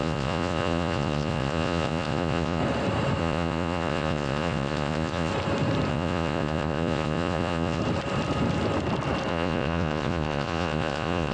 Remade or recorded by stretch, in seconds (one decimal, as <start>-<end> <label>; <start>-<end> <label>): 0.0-2.6 remade; 2.6-3.2 recorded; 3.2-5.3 remade; 5.3-5.9 recorded; 5.9-7.8 remade; 7.8-9.3 recorded; 9.3-11.3 remade